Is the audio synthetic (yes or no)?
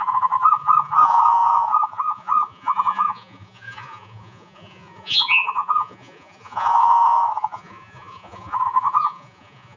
yes